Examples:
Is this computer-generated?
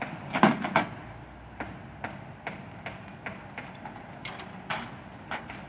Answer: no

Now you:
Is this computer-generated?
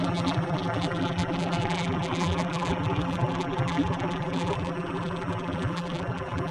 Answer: yes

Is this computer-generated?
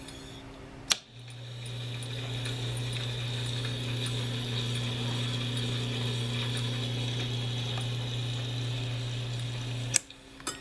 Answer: no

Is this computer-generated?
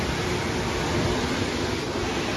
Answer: no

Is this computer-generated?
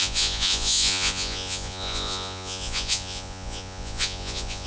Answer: yes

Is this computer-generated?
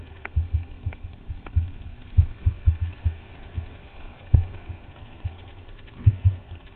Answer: yes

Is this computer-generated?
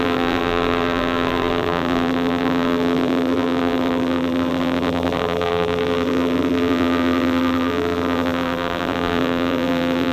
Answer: yes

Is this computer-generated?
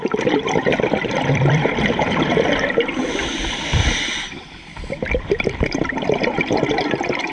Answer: yes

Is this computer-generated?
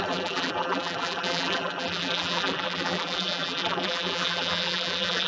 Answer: yes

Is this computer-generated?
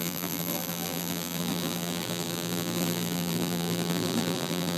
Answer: yes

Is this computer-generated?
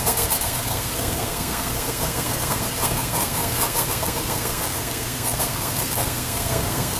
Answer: yes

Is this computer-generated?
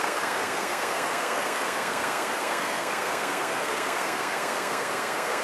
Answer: yes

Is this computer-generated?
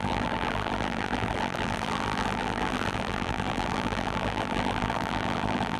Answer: yes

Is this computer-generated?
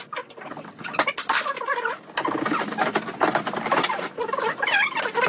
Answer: no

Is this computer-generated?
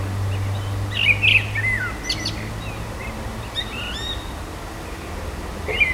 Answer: no